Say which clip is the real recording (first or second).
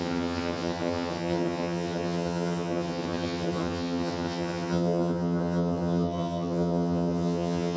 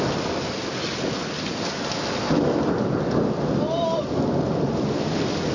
second